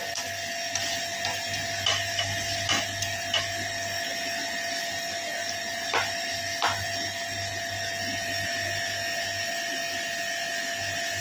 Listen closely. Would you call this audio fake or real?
real